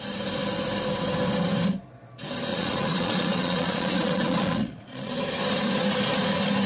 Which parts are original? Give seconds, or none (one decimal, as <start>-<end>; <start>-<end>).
0.0-2.5; 5.1-6.7